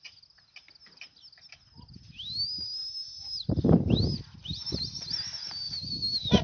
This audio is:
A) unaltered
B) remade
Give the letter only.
A